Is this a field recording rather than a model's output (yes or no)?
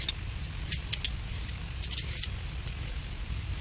no